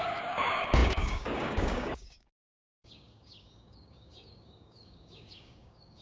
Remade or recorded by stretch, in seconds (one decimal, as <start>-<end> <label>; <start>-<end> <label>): 0.0-6.0 remade